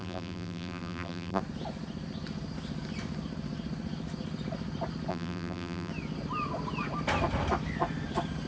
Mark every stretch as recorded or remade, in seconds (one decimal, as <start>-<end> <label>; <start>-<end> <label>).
0.0-1.4 remade; 1.4-5.1 recorded; 5.1-5.9 remade; 5.9-8.5 recorded